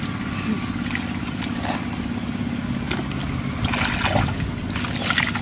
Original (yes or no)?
yes